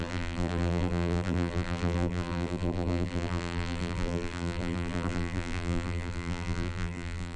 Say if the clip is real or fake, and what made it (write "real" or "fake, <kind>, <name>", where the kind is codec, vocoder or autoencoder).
fake, vocoder, BigVGAN v2